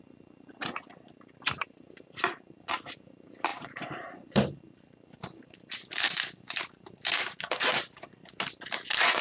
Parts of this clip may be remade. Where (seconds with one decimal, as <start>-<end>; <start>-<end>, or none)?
0.0-9.2